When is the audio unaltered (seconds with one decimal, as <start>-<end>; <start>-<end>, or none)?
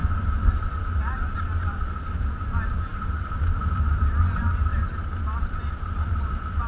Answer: 0.0-6.7